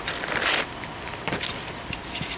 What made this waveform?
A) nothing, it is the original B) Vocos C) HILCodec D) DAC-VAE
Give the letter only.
A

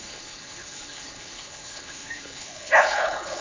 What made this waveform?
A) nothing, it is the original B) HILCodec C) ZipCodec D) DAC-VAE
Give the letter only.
B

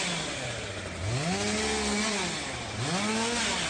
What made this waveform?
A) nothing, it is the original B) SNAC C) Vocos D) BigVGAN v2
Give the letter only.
A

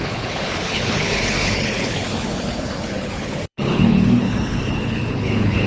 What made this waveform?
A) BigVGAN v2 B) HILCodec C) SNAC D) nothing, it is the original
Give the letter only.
B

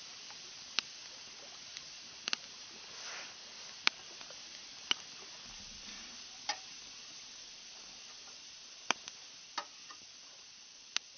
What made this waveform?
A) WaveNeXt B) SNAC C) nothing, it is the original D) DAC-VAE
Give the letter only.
C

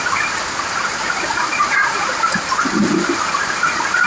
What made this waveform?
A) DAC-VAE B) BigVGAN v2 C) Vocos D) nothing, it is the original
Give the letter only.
D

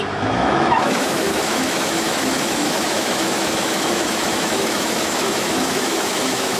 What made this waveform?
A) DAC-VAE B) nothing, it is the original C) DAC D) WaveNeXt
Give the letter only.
A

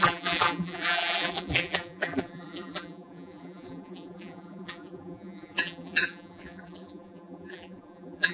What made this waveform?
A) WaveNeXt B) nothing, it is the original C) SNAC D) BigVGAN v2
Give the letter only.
D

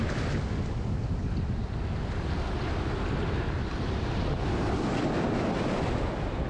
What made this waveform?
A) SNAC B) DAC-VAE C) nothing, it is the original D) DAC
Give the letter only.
C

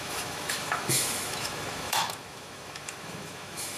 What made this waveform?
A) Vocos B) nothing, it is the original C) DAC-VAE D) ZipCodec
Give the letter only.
C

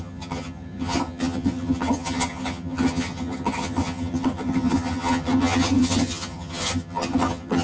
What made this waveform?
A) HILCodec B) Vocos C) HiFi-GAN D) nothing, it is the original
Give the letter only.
C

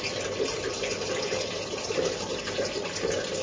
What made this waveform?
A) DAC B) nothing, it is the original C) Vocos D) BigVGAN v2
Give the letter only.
B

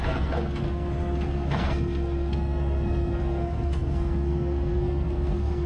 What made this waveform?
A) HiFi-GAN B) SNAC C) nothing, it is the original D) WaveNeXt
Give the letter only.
B